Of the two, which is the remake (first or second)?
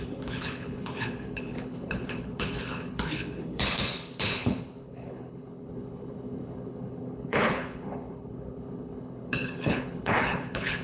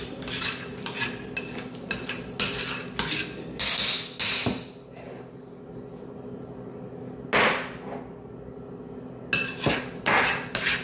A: first